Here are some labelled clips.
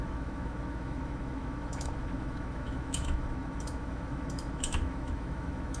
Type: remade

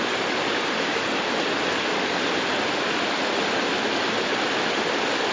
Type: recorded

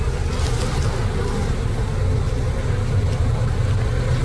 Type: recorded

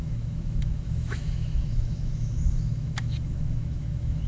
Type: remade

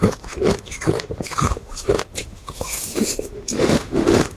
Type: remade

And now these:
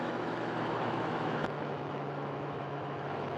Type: remade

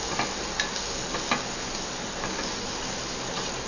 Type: recorded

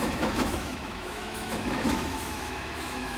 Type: remade